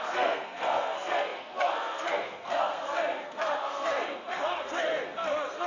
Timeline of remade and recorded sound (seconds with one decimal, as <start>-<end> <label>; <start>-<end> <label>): 0.0-5.7 remade